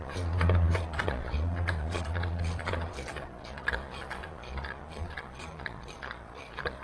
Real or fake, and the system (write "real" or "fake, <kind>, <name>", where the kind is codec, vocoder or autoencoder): fake, vocoder, Vocos